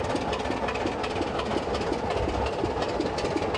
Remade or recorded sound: recorded